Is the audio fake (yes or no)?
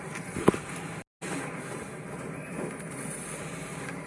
no